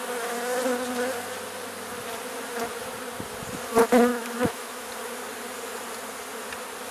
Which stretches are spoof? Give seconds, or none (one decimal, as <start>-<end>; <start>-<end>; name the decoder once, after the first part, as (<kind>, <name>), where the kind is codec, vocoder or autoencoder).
4.1-4.9 (autoencoder, DAC-VAE)